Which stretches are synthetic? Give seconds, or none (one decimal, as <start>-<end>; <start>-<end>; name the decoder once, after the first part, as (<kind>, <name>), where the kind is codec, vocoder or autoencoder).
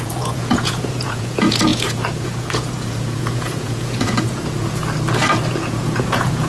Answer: 0.0-4.8 (vocoder, Vocos); 5.5-6.5